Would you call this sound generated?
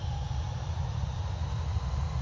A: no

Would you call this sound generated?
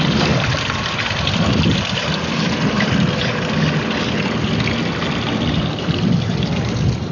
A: no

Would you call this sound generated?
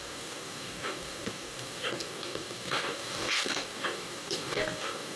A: yes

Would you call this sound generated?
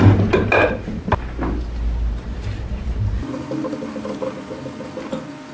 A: no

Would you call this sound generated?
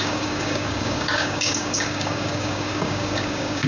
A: yes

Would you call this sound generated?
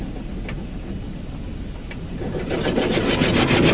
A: no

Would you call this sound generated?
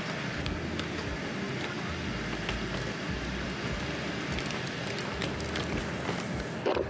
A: no